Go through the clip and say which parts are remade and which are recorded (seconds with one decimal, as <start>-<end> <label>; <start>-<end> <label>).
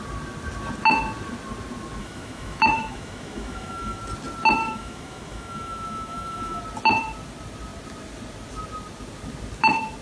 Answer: 0.0-2.0 recorded; 2.0-4.0 remade; 4.0-4.6 recorded; 4.6-6.6 remade; 6.6-10.0 recorded